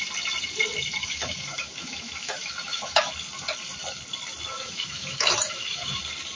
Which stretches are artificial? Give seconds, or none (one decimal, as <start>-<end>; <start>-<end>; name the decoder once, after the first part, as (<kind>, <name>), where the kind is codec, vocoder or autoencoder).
1.0-3.1 (autoencoder, DAC-VAE); 4.5-6.0